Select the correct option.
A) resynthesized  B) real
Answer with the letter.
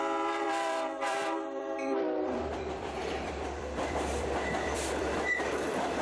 A